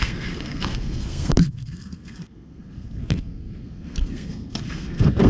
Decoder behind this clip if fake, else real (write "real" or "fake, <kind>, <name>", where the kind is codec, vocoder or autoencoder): fake, codec, SNAC